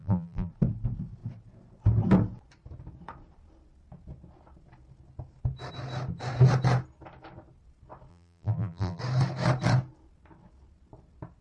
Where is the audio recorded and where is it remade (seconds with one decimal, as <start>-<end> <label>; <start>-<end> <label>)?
0.0-0.5 remade; 0.5-8.1 recorded; 8.1-9.0 remade; 9.0-11.4 recorded